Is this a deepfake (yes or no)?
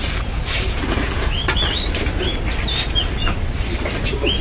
no